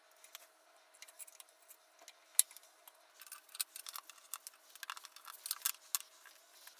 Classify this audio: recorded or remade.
recorded